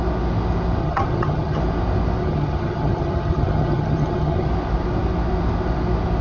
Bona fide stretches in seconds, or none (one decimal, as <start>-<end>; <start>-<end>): 0.0-0.8; 1.6-2.2; 4.5-6.2